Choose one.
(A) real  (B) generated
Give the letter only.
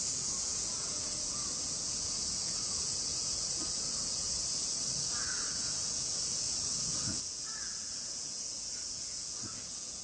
B